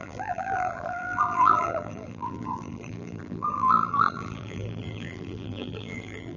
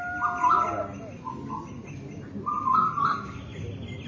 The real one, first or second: second